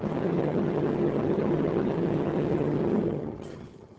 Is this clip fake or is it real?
fake